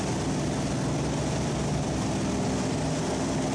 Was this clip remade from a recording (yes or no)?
no